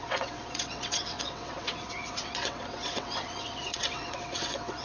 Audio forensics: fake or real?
fake